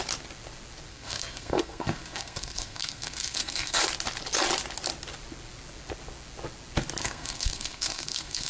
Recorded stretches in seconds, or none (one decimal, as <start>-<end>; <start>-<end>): 0.0-0.9; 3.8-7.0